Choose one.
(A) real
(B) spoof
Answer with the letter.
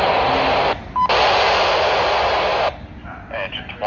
A